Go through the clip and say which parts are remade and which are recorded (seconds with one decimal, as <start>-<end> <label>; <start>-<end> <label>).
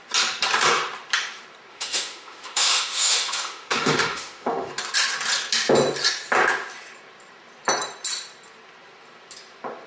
0.0-1.7 recorded; 1.7-4.7 remade; 4.7-9.9 recorded